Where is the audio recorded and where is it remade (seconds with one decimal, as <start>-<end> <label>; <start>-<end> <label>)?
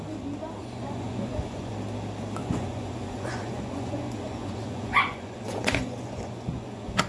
0.0-0.6 recorded; 0.6-1.7 remade; 1.7-2.4 recorded; 2.4-7.1 remade